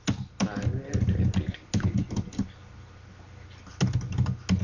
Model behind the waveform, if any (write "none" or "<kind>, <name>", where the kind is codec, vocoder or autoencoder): none